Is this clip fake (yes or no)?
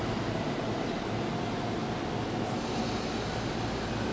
no